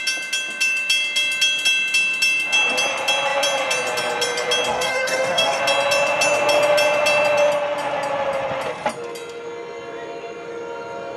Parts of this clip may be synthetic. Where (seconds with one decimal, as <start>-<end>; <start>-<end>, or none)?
4.7-5.6